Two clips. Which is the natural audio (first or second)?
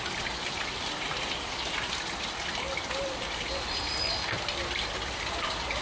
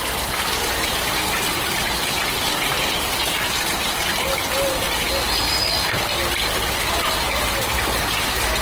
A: second